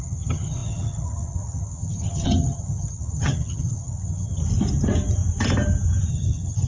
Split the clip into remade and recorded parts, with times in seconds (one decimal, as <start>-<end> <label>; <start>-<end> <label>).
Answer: 0.0-4.4 remade; 4.4-6.1 recorded; 6.1-6.7 remade